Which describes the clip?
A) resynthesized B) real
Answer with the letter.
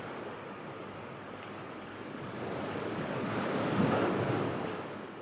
A